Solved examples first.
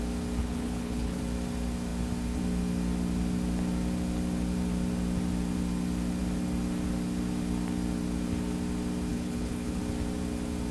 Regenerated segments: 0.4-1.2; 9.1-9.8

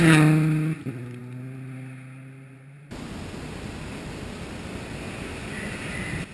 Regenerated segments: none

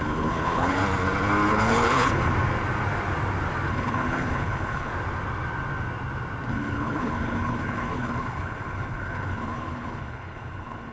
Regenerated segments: 0.0-0.8; 1.5-2.3; 3.7-4.9; 6.5-10.9

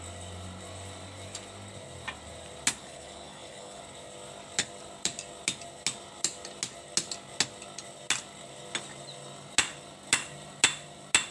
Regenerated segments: 2.8-3.8

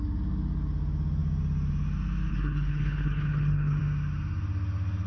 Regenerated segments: 2.3-3.8

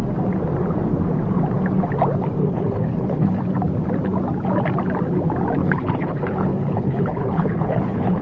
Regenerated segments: 2.4-3.4; 5.6-8.2

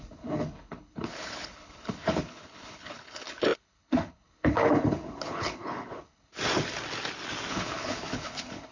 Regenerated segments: 0.0-6.3; 7.5-8.7